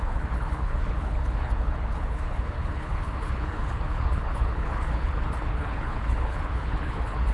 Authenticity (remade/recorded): remade